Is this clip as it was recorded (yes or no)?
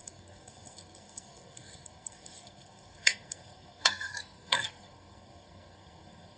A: no